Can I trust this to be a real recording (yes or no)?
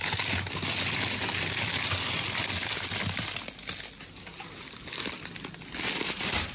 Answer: yes